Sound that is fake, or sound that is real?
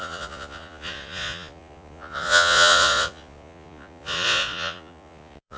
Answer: fake